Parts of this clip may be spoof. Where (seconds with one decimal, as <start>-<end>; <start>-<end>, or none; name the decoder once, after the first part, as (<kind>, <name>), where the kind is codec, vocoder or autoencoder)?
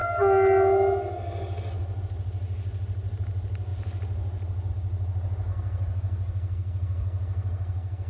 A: 5.5-8.1 (codec, SNAC)